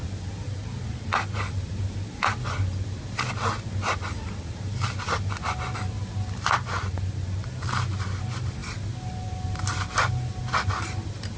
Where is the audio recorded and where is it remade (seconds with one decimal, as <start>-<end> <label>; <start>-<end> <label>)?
0.0-11.4 recorded